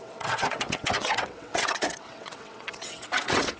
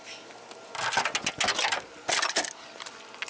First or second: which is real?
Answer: second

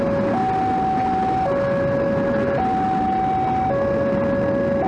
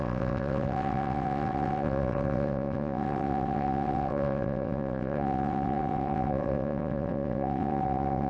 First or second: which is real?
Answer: first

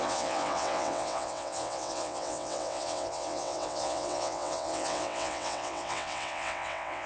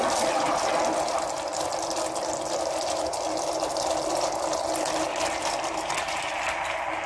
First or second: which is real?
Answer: second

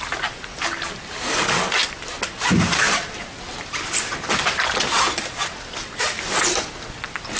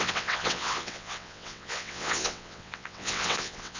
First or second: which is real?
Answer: first